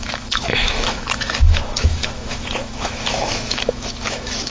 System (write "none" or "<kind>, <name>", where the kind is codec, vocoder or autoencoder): autoencoder, DAC-VAE